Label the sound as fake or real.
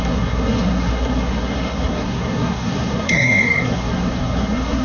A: fake